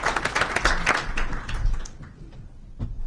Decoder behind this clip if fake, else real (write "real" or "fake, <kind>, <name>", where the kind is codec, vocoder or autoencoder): real